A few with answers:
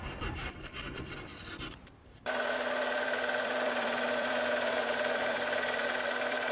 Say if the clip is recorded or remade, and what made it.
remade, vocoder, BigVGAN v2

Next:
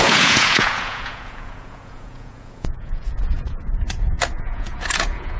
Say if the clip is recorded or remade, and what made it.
remade, vocoder, Vocos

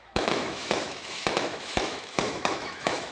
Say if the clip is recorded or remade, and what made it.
remade, autoencoder, DAC-VAE